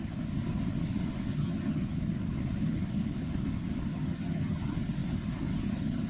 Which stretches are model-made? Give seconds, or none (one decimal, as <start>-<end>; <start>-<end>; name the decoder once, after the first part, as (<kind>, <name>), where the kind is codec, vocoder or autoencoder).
1.3-1.8 (vocoder, HiFi-GAN); 3.9-4.6